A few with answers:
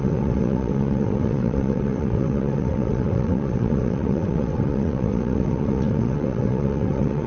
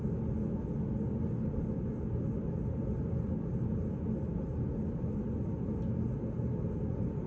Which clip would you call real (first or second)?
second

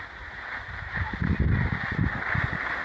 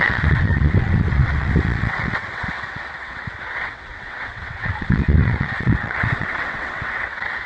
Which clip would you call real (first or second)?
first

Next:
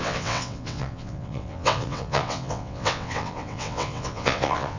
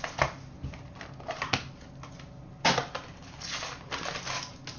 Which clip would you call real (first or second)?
second